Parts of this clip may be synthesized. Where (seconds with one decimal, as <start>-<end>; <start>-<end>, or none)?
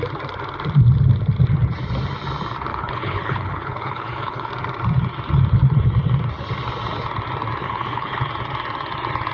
2.7-4.5; 7.6-8.2